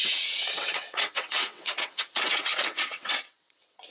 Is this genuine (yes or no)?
no